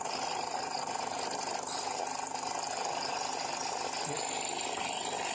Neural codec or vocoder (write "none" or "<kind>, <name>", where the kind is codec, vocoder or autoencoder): none